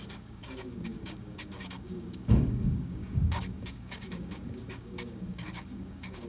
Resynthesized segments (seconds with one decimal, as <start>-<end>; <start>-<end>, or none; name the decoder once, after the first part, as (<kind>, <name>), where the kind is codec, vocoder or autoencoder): 0.0-6.3 (codec, DAC)

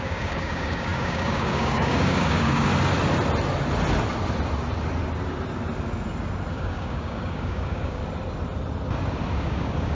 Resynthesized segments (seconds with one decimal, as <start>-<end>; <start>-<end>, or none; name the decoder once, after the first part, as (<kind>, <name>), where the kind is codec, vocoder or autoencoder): 0.0-2.7 (codec, DAC); 6.5-8.0; 9.4-9.9

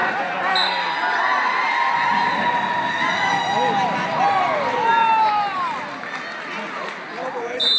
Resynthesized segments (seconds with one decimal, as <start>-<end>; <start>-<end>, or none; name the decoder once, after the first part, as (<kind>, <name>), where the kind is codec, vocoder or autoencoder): none

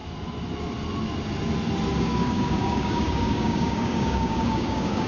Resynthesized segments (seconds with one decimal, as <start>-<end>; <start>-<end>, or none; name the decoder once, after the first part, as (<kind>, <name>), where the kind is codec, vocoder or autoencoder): 2.0-5.1 (codec, DAC)

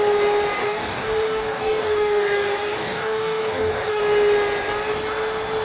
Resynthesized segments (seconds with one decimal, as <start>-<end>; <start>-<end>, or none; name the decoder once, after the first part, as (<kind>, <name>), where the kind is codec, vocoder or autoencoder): 0.6-4.0 (codec, DAC)

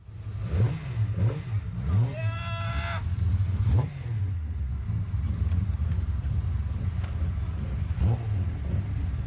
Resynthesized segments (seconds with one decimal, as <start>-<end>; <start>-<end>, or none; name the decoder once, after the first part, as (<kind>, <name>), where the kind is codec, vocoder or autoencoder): none

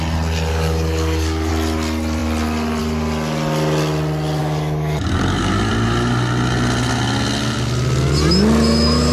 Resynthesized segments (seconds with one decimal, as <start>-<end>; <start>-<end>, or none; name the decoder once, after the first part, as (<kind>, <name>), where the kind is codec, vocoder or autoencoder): 0.5-1.5 (codec, DAC); 4.4-5.7

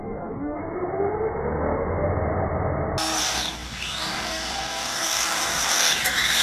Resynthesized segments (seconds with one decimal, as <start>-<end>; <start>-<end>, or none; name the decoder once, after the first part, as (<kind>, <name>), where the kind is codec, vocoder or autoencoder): 0.0-0.6 (codec, DAC); 3.2-6.4